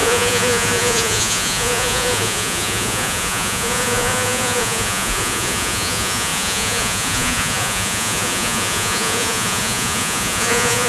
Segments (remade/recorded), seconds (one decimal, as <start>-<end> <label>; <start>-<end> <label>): 0.0-10.9 remade